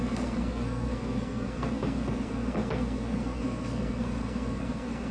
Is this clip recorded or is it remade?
remade